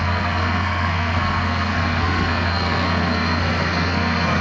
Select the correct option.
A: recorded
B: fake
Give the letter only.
B